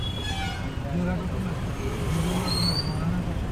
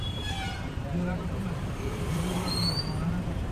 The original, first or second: first